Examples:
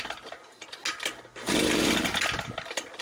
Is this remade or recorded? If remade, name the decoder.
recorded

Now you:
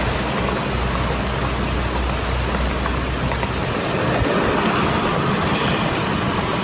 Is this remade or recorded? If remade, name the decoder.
recorded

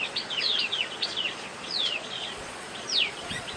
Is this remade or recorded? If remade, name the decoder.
remade, vocoder, Vocos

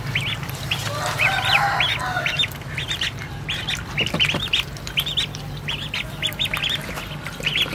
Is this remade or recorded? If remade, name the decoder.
recorded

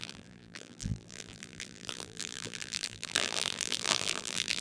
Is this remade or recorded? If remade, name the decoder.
remade, vocoder, BigVGAN v2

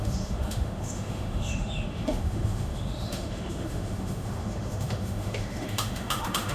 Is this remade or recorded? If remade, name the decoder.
remade, autoencoder, DAC-VAE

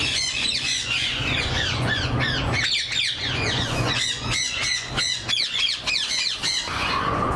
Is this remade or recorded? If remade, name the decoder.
remade, vocoder, Vocos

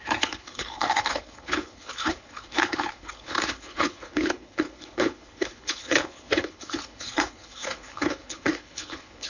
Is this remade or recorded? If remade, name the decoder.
remade, codec, HILCodec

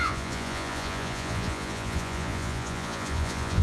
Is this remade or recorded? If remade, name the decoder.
remade, vocoder, Vocos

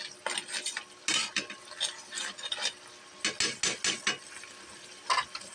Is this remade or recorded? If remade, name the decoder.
recorded